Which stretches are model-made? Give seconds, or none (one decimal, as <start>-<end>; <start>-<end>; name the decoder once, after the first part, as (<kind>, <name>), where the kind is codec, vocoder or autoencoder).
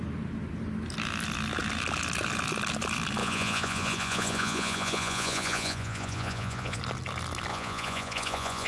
3.2-6.8 (vocoder, Vocos); 7.5-8.7